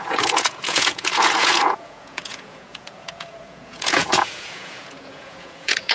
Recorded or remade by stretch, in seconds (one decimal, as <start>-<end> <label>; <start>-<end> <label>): 0.0-5.9 remade